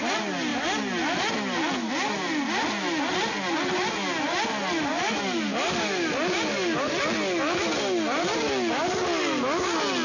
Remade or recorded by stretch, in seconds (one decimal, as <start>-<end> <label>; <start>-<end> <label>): 0.0-10.0 recorded